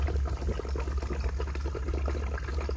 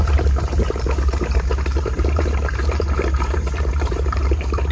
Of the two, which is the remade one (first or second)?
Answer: second